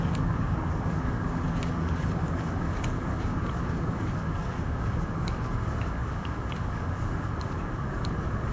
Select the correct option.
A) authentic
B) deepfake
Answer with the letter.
B